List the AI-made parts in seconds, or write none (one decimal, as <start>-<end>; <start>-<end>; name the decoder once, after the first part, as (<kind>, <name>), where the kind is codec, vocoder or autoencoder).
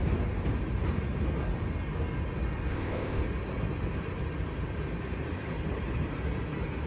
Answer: 2.7-3.2 (codec, ZipCodec)